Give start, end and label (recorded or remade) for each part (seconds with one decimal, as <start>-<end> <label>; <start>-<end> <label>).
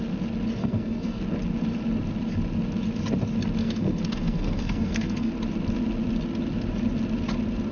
0.0-0.6 recorded; 0.6-1.2 remade; 1.2-3.6 recorded; 3.6-5.3 remade; 5.3-7.7 recorded